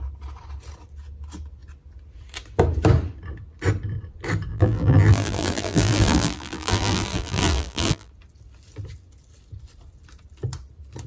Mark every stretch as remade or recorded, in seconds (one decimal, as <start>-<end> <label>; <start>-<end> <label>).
0.0-4.5 recorded; 4.5-8.1 remade; 8.1-11.1 recorded